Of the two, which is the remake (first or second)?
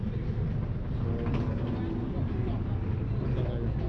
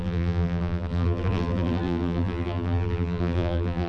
second